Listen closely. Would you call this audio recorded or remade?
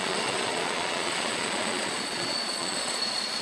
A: remade